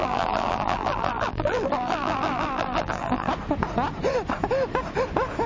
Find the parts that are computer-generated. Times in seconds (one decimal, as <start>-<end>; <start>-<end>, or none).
0.0-3.3